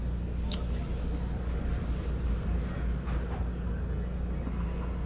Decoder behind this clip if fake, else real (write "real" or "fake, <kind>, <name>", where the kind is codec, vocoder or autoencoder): real